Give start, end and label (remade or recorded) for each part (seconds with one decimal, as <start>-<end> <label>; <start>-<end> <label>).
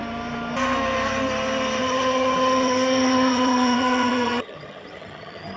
0.0-1.8 recorded; 1.8-5.6 remade